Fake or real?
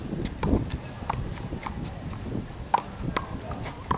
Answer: real